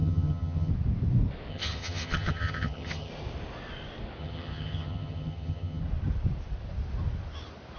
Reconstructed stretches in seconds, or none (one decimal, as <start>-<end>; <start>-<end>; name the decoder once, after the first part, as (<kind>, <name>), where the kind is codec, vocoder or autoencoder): 0.0-0.7 (vocoder, HiFi-GAN); 1.5-3.1; 4.2-5.8